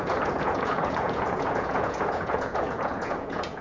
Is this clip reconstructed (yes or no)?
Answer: yes